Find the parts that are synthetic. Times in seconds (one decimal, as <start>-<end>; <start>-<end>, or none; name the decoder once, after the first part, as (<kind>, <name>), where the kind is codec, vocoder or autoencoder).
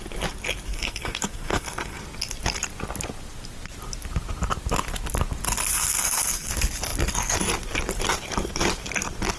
0.7-2.0 (codec, SNAC); 5.7-6.5